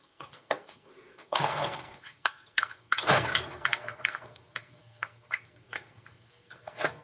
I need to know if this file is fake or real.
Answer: fake